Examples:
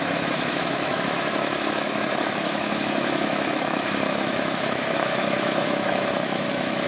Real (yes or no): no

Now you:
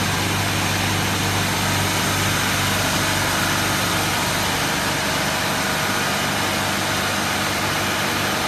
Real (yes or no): yes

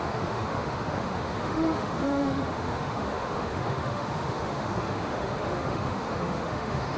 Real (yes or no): no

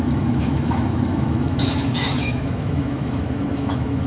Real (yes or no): no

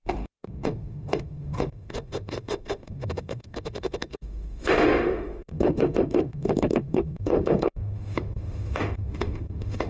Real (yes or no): no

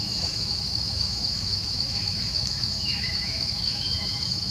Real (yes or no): no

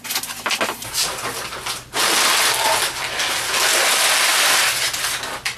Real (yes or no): yes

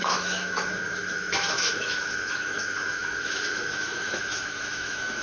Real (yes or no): no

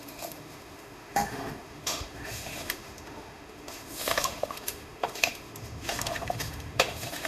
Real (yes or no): no